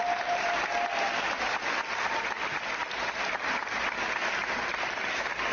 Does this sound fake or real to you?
real